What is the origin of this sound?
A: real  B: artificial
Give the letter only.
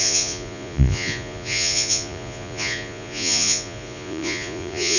B